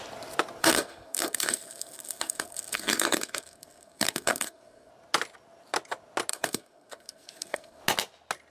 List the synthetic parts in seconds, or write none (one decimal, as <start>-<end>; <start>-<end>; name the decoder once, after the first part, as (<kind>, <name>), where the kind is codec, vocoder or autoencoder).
0.6-4.9 (codec, SNAC); 6.3-7.8